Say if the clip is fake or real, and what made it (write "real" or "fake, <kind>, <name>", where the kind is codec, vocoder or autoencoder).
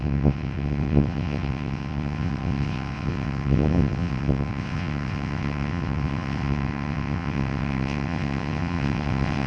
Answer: fake, vocoder, WaveNeXt